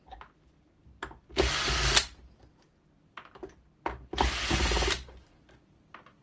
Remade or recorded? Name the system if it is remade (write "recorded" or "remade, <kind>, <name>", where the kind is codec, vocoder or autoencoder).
recorded